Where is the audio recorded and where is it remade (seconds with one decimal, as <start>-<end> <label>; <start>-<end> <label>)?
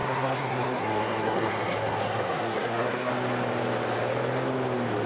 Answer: 0.0-3.1 remade; 3.1-5.1 recorded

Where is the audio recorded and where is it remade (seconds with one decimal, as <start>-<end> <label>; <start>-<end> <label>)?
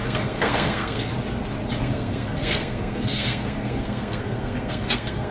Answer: 0.0-1.1 remade; 1.1-1.8 recorded; 1.8-5.3 remade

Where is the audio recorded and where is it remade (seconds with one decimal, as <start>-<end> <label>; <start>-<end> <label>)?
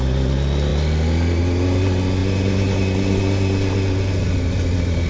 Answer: 0.0-5.1 recorded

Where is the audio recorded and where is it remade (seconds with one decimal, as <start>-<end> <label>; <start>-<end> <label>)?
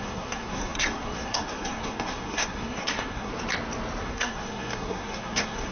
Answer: 0.0-3.3 remade; 3.3-4.0 recorded; 4.0-5.7 remade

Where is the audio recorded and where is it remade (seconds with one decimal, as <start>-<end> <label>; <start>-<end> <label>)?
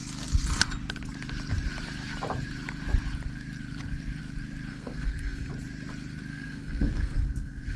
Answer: 0.0-4.7 recorded; 4.7-5.5 remade; 5.5-6.3 recorded; 6.3-7.8 remade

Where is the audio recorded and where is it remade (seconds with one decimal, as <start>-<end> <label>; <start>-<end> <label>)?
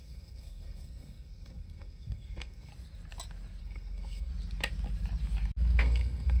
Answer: 0.0-2.7 remade; 2.7-3.6 recorded; 3.6-4.3 remade; 4.3-5.8 recorded; 5.8-6.4 remade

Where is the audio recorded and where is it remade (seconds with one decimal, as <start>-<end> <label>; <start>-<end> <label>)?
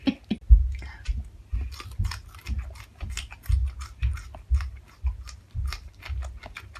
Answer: 0.0-6.8 recorded